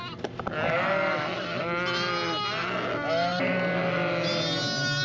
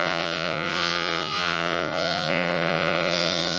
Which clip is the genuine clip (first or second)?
first